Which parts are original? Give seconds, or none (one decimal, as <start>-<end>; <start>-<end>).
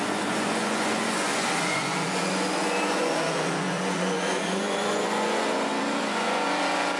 none